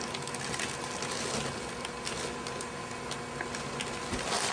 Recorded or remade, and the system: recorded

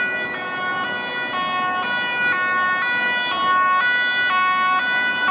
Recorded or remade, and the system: recorded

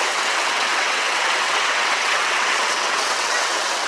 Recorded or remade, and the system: remade, vocoder, WaveNeXt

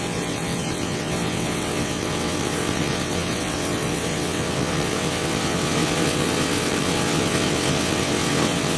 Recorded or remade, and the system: remade, vocoder, WaveNeXt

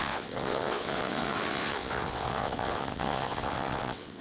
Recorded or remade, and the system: remade, vocoder, WaveNeXt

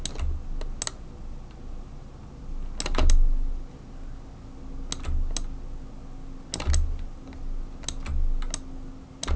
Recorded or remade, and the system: recorded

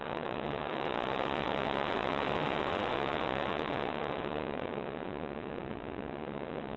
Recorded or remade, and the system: remade, vocoder, WaveNeXt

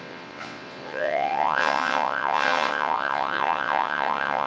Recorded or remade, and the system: remade, vocoder, WaveNeXt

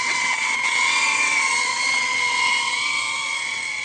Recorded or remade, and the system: remade, vocoder, WaveNeXt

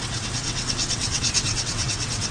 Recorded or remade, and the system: remade, vocoder, WaveNeXt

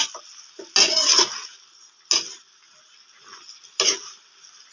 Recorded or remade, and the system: recorded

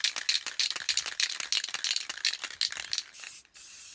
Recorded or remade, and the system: recorded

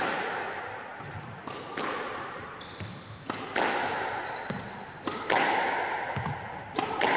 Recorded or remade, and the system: recorded